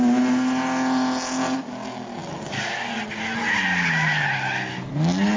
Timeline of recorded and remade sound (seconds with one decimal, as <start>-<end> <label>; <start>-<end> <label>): 0.0-5.4 recorded